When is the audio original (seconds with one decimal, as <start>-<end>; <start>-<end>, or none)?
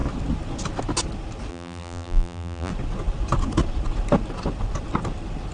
0.0-1.5; 2.7-5.5